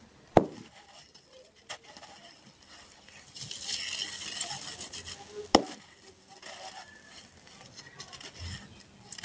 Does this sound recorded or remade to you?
recorded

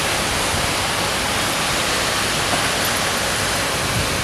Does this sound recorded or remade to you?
recorded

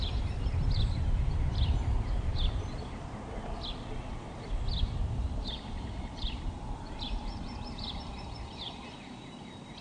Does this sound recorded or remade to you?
remade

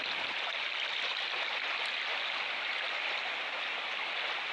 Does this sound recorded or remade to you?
recorded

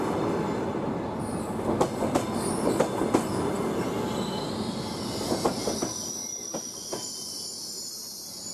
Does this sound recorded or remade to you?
recorded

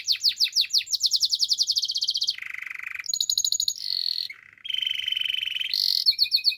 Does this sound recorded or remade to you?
recorded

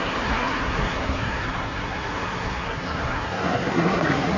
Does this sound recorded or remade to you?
remade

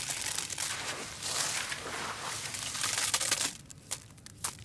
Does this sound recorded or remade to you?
recorded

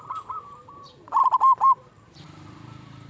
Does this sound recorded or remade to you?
remade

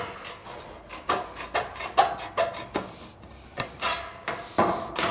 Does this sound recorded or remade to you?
recorded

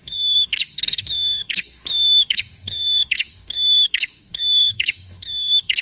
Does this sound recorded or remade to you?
remade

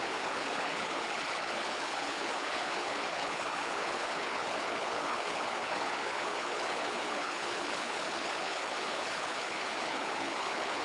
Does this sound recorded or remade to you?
remade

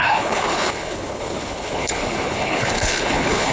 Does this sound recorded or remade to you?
remade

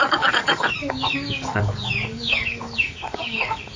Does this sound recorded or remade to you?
remade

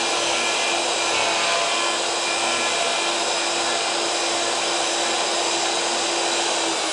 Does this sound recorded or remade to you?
recorded